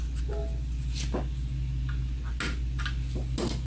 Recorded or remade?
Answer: recorded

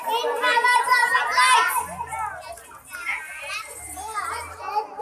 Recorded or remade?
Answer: recorded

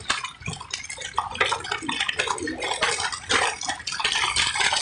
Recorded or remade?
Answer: recorded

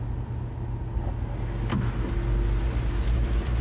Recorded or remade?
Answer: recorded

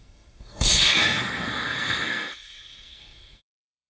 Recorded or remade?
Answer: remade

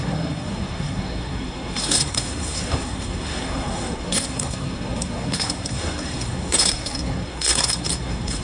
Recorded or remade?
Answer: remade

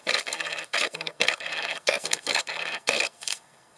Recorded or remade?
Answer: remade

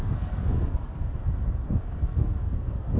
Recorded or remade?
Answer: remade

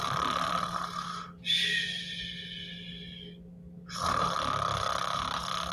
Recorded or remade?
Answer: recorded